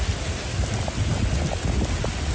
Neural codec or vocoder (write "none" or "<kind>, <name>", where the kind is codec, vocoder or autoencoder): none